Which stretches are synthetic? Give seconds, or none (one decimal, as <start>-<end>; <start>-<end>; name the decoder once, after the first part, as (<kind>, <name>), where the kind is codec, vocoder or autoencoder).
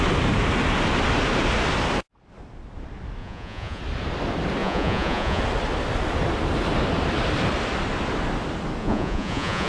3.2-3.8 (vocoder, Vocos); 4.6-5.4; 8.8-9.7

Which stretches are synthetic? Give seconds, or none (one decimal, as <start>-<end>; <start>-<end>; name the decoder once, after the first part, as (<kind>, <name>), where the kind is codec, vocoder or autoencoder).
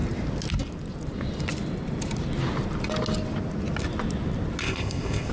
4.6-5.3 (codec, ZipCodec)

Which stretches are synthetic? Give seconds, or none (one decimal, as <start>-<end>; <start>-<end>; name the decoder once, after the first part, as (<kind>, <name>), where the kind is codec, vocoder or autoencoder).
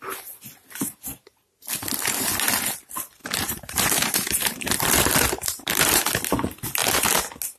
3.2-6.0 (vocoder, BigVGAN v2)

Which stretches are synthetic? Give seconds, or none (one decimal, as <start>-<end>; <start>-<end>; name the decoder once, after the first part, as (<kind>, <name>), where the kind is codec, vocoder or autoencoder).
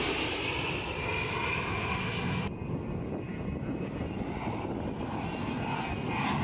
none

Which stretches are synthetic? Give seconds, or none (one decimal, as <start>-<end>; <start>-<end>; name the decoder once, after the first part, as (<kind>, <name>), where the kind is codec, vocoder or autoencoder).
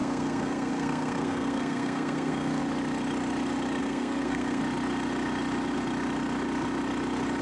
0.0-2.6 (codec, SNAC); 3.8-4.6